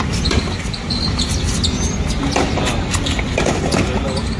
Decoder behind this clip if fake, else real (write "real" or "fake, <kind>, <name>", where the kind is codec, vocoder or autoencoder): real